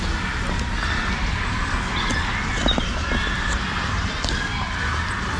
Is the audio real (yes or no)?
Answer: yes